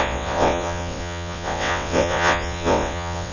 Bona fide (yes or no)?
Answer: no